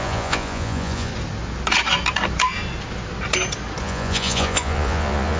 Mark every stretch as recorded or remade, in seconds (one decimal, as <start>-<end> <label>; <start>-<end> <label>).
0.0-1.1 remade; 1.1-3.8 recorded; 3.8-5.4 remade